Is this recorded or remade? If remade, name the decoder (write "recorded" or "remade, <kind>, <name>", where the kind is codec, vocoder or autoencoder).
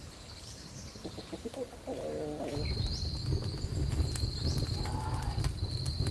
recorded